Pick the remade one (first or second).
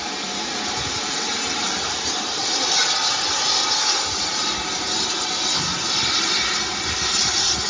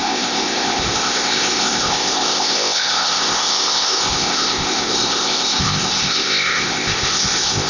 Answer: second